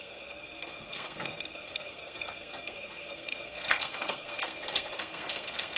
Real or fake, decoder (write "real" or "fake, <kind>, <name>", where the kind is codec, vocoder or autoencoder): fake, codec, SNAC